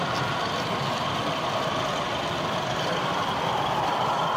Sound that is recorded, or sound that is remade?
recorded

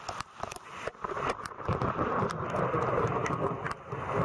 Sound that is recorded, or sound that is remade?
recorded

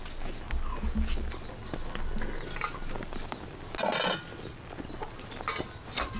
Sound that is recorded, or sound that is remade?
recorded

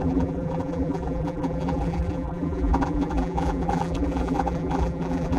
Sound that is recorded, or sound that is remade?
remade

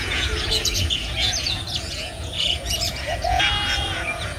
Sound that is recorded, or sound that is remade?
remade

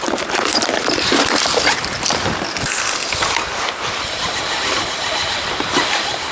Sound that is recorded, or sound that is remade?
remade